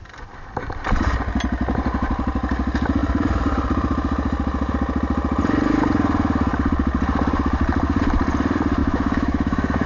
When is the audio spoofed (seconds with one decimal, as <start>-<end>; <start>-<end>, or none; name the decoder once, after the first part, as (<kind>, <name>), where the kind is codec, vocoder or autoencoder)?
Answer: 8.8-9.9 (autoencoder, DAC-VAE)